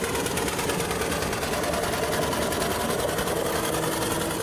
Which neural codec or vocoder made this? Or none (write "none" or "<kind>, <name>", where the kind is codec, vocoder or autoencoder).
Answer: none